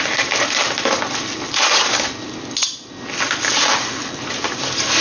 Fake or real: real